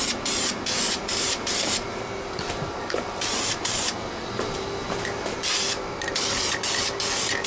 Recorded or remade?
remade